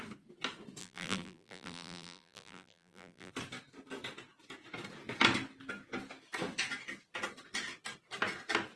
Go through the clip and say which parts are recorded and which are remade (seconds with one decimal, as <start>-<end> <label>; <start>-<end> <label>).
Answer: 0.0-0.8 recorded; 0.8-3.3 remade; 3.3-8.8 recorded